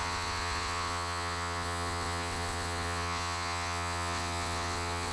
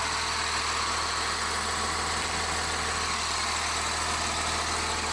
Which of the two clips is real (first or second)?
second